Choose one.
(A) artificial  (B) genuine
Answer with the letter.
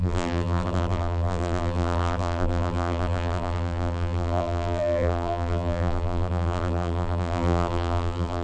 A